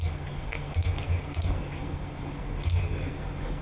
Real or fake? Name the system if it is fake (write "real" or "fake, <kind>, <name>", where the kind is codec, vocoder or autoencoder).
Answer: fake, codec, SNAC